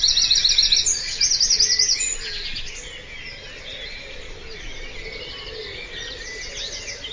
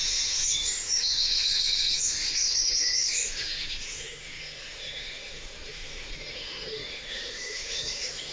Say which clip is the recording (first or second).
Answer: first